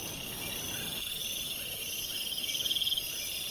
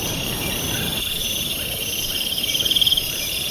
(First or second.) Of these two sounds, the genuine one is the first